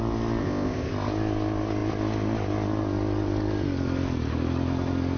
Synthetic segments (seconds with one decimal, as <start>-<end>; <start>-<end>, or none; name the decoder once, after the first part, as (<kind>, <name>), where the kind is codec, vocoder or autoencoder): 0.4-0.9 (codec, ZipCodec)